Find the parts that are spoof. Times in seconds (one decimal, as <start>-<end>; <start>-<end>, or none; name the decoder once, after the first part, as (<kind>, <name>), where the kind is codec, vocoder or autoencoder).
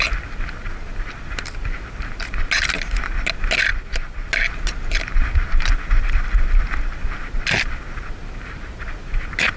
3.7-4.3 (vocoder, BigVGAN v2)